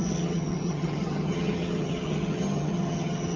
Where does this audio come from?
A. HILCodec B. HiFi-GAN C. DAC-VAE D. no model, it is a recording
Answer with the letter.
B